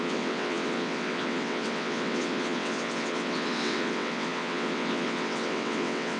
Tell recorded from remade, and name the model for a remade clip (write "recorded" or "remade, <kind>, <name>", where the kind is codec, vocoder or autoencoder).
remade, vocoder, WaveNeXt